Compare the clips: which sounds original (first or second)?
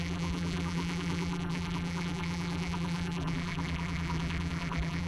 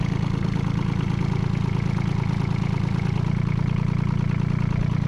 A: second